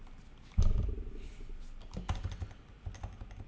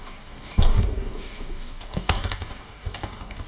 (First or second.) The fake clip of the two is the second